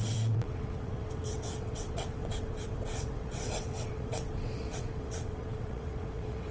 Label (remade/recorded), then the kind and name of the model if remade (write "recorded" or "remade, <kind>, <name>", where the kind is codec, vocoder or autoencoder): remade, vocoder, WaveNeXt